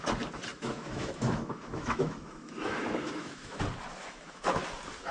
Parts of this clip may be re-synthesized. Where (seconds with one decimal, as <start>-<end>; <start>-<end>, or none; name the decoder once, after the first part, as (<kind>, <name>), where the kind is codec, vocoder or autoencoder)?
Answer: 0.5-3.6 (autoencoder, DAC-VAE); 4.0-4.6